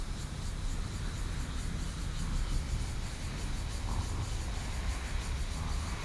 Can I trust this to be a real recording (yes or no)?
yes